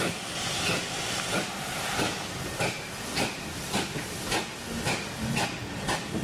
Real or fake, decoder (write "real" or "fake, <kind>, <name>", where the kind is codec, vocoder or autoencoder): real